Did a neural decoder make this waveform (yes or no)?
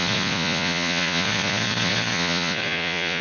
yes